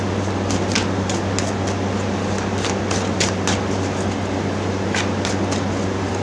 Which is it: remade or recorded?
recorded